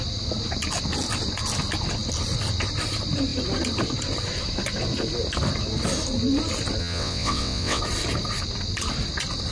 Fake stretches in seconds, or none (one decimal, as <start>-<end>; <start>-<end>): 6.8-7.8